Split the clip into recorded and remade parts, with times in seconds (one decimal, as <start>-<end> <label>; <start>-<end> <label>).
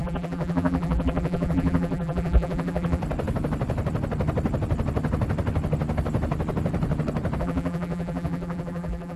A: 0.0-3.0 remade; 3.0-7.4 recorded; 7.4-9.2 remade